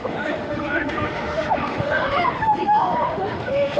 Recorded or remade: remade